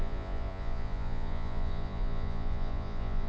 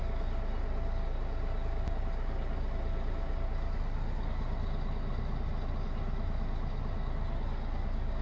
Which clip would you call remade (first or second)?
first